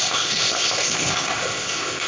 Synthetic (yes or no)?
yes